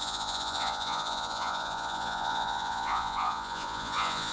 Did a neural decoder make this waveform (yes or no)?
yes